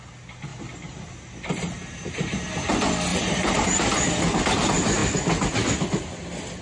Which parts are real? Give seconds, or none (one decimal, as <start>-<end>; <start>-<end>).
0.0-3.1; 4.0-6.6